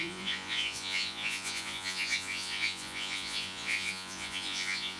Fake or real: fake